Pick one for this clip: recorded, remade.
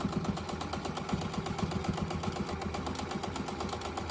recorded